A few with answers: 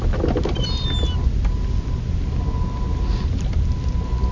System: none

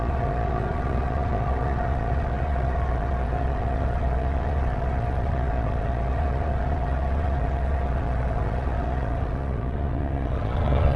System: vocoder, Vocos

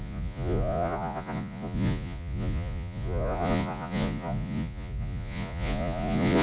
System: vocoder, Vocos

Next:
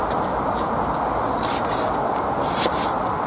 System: none